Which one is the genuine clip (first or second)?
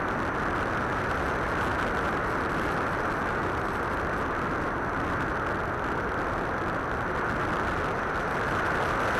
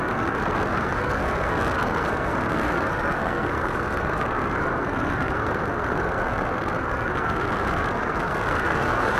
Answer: first